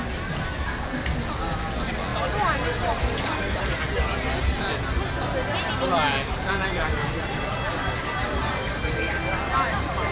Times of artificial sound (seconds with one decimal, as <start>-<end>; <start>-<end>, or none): none